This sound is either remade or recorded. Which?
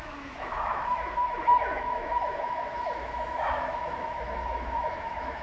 remade